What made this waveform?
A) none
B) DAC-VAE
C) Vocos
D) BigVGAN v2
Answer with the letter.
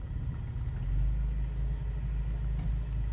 A